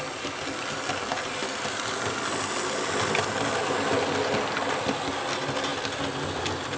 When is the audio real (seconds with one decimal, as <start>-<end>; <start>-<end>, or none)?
0.0-6.8